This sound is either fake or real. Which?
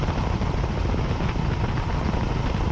real